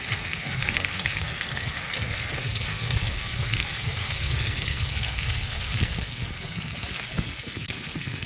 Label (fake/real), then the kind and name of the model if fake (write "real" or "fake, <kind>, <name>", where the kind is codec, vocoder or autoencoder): fake, codec, SNAC